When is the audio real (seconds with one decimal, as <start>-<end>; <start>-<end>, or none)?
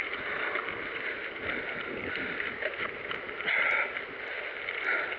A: 0.0-5.2